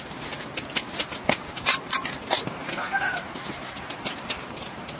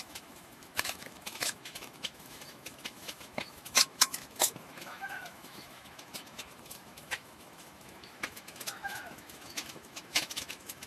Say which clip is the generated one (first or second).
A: second